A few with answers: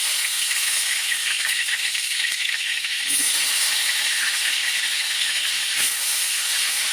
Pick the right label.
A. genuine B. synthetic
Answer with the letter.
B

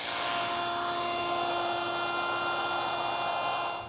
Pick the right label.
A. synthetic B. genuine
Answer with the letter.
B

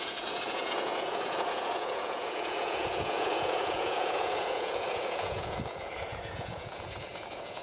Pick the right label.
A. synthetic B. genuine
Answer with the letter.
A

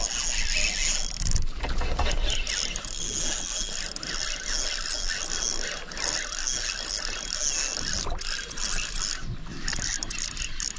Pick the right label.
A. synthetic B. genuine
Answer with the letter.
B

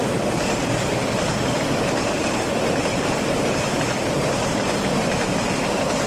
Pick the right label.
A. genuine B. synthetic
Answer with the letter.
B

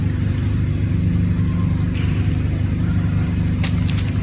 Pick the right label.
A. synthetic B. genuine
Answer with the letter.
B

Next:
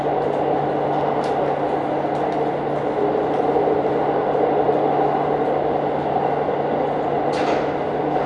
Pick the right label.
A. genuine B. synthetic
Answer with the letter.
A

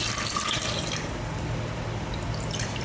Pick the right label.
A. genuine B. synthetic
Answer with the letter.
A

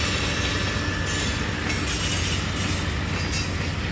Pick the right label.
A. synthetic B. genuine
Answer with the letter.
B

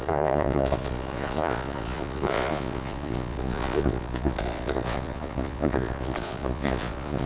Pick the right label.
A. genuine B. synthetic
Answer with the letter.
B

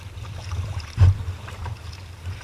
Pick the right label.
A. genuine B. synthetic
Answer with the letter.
A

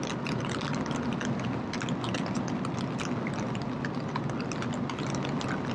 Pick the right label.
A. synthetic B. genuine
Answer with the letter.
B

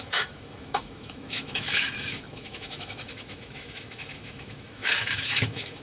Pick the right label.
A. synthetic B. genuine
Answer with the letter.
A